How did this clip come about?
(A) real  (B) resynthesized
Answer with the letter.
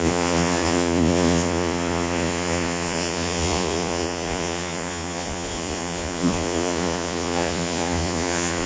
B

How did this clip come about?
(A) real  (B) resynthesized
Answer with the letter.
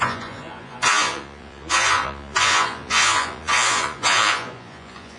B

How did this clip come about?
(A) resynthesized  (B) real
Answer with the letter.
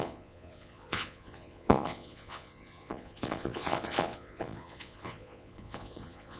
A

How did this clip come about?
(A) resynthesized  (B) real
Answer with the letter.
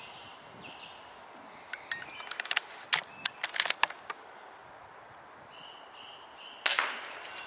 B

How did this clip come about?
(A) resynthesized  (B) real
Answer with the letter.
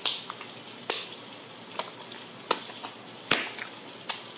B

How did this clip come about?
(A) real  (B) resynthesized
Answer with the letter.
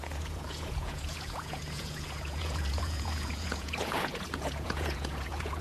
B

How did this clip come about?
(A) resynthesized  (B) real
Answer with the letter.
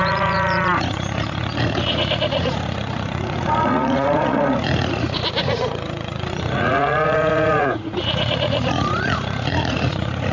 A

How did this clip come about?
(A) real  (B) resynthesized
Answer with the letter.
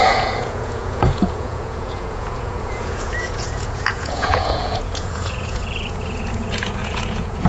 B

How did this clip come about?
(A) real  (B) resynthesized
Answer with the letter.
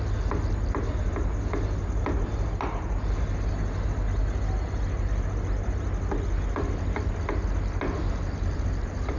A